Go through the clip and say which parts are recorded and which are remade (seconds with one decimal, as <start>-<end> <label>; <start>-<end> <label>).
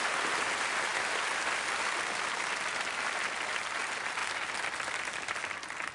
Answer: 0.0-5.9 recorded